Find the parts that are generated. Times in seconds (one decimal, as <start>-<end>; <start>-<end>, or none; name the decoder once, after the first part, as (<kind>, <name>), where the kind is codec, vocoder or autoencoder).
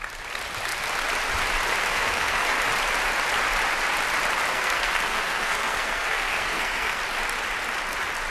1.8-2.6 (codec, SNAC); 4.5-7.0